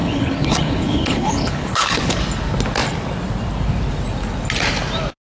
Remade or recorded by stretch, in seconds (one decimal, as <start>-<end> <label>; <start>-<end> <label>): 0.0-2.2 remade; 2.2-5.3 recorded

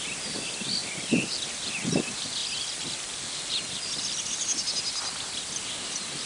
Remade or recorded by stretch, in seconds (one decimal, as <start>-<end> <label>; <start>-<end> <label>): 0.0-6.3 recorded